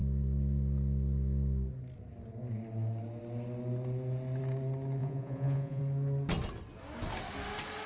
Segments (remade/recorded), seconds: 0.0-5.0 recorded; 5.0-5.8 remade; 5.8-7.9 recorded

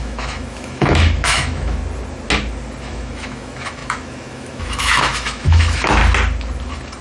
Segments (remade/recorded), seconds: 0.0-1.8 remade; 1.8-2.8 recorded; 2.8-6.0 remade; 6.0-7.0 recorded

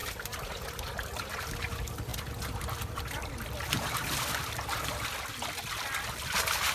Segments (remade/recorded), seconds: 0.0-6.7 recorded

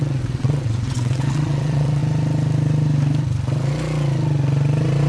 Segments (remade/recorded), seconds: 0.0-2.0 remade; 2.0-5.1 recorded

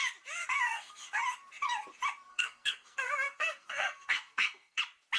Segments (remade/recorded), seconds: 0.0-0.4 recorded; 0.4-1.2 remade; 1.2-2.3 recorded; 2.3-4.8 remade; 4.8-5.2 recorded

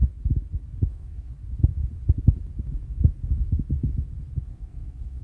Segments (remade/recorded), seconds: 0.0-0.9 recorded; 0.9-1.3 remade; 1.3-4.4 recorded; 4.4-5.2 remade

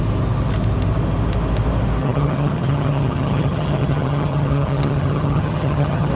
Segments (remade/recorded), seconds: 0.0-2.0 recorded; 2.0-6.1 remade